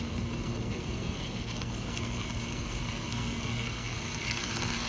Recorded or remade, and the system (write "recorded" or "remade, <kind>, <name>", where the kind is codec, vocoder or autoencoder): remade, codec, SNAC